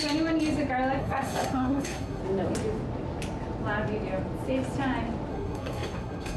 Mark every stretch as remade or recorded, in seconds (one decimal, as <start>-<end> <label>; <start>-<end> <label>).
0.0-1.0 recorded; 1.0-2.2 remade; 2.2-5.3 recorded; 5.3-6.4 remade